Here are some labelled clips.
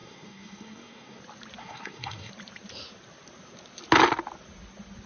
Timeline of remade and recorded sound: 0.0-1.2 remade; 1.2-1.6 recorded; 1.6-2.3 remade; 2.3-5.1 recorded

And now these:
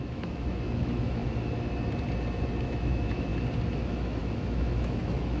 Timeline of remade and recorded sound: 0.0-1.2 remade; 1.2-2.6 recorded; 2.6-3.3 remade; 3.3-3.8 recorded; 3.8-5.4 remade

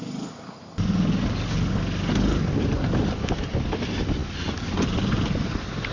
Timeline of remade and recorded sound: 0.0-5.9 recorded